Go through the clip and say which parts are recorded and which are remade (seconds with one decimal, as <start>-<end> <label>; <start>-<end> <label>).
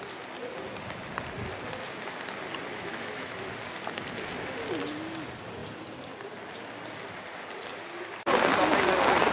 0.0-2.7 recorded; 2.7-3.3 remade; 3.3-9.3 recorded